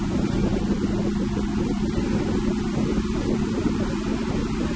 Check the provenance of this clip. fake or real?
fake